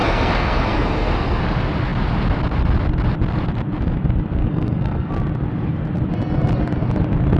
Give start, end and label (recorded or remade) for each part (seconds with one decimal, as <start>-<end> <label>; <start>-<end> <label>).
0.0-1.4 remade; 1.4-4.4 recorded; 4.4-5.1 remade; 5.1-7.4 recorded

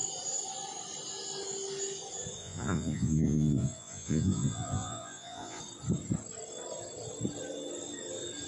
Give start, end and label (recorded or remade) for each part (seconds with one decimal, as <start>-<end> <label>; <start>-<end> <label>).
0.0-2.4 recorded; 2.4-5.6 remade; 5.6-8.5 recorded

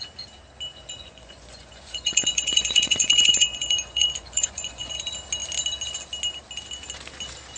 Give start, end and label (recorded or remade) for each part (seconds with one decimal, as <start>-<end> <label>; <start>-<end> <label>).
0.0-0.7 recorded; 0.7-4.9 remade; 4.9-7.6 recorded

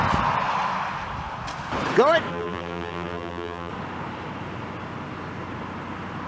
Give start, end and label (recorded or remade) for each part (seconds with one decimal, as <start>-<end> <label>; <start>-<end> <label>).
0.0-2.3 recorded; 2.3-3.7 remade; 3.7-6.3 recorded

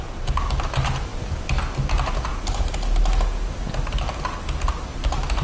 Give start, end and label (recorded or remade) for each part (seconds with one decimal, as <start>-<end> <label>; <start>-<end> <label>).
0.0-5.4 recorded